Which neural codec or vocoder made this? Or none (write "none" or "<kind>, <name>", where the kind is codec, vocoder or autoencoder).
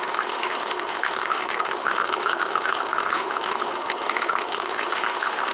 autoencoder, DAC-VAE